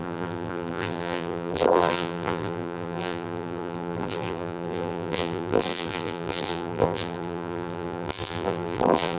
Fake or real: fake